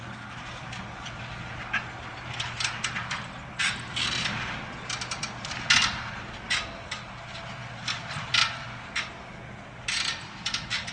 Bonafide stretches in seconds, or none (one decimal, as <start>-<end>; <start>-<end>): 0.0-10.9